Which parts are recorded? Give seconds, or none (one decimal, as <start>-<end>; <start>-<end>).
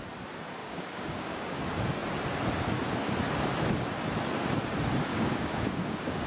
0.0-0.6; 1.6-5.1